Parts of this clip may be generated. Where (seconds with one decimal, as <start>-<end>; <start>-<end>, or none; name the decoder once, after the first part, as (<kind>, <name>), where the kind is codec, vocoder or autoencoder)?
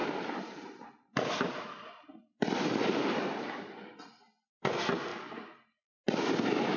0.0-3.8 (vocoder, BigVGAN v2)